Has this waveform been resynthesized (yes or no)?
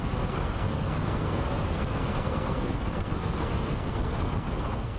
yes